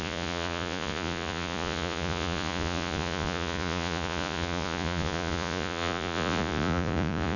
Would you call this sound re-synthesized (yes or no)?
yes